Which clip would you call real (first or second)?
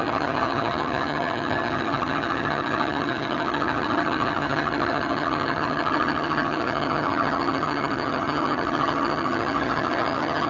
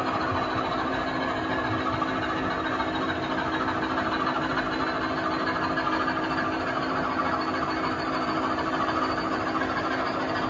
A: second